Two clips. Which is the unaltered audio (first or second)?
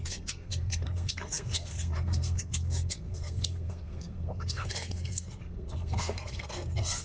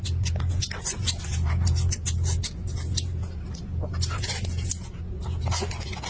second